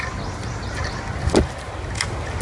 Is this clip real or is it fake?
real